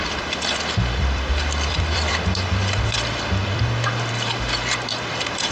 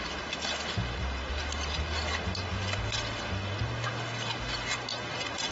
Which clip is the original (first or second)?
second